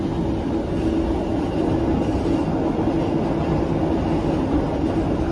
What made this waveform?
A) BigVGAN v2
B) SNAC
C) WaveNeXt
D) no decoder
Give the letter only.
D